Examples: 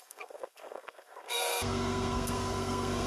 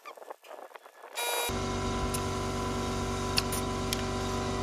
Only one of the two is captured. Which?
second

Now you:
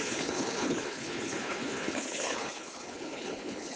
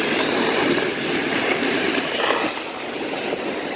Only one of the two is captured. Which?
second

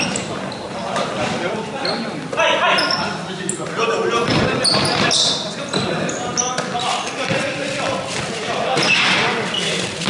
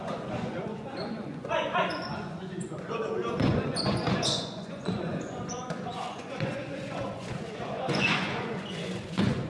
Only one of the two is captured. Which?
first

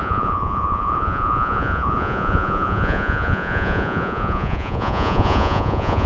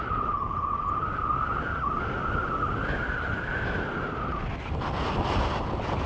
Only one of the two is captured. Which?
second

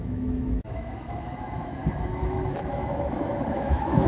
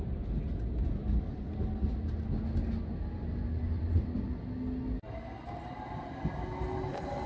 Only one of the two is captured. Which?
second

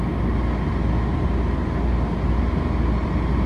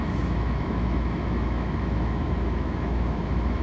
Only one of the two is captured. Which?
first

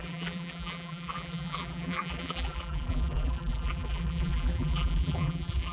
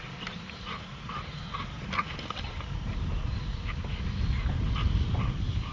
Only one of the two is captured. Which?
second